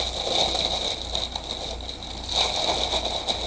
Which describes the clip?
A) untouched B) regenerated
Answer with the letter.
A